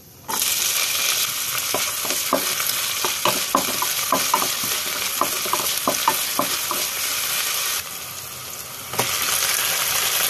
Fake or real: real